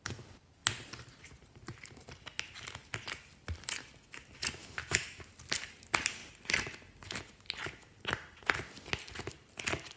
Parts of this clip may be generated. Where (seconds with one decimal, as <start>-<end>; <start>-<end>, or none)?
4.6-5.3